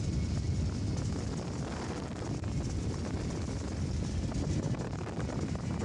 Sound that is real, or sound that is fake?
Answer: real